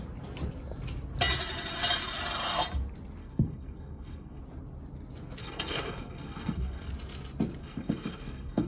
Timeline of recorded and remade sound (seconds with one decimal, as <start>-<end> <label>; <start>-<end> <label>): 0.0-3.2 recorded; 3.2-4.4 remade; 4.4-5.4 recorded; 5.4-6.9 remade; 6.9-7.6 recorded; 7.6-8.7 remade